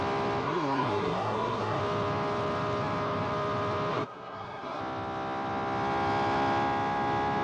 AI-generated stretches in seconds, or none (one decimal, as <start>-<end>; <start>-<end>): 0.4-1.8; 3.9-4.8